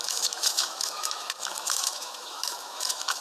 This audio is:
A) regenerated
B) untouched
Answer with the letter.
A